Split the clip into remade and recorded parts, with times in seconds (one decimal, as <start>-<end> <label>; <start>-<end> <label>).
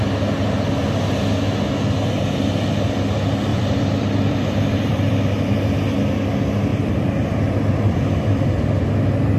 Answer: 0.0-3.5 recorded; 3.5-5.3 remade; 5.3-6.7 recorded; 6.7-8.8 remade; 8.8-9.4 recorded